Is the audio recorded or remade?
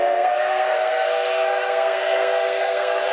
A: remade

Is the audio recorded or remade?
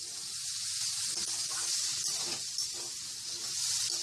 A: recorded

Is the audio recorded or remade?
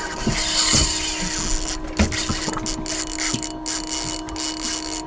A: recorded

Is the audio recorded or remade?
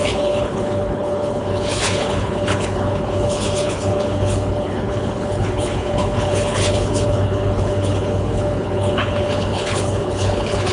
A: remade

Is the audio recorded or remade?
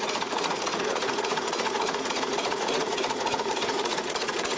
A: remade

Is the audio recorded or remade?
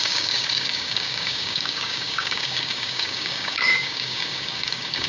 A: remade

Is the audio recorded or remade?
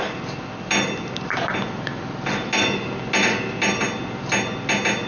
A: recorded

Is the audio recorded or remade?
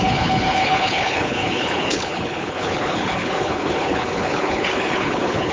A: remade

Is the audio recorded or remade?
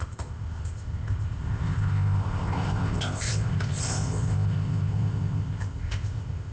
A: remade